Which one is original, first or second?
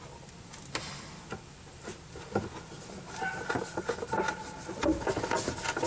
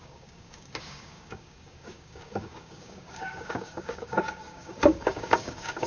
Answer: first